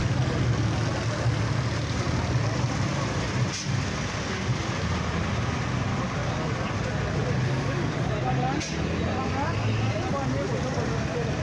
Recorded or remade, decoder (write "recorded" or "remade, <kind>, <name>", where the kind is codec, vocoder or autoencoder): recorded